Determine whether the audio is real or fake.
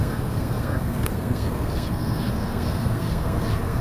fake